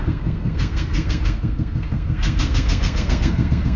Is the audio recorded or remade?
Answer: remade